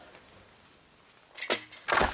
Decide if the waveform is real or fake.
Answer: real